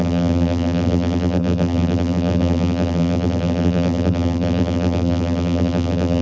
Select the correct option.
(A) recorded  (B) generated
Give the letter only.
B